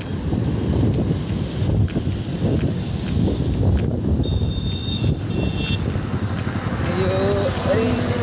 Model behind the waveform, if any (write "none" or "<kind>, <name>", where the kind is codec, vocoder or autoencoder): none